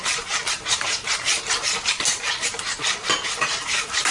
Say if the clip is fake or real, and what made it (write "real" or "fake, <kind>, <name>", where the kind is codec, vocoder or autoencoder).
fake, vocoder, BigVGAN v2